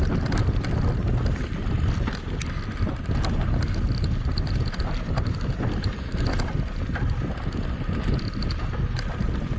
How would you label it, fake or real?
real